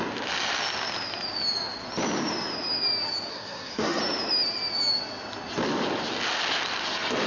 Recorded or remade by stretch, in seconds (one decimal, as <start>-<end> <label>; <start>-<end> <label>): 0.0-3.3 recorded; 3.3-4.0 remade; 4.0-7.3 recorded